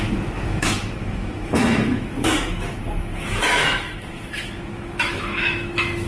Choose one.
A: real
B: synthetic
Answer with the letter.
B